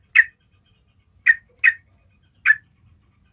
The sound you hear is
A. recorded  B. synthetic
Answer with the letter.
A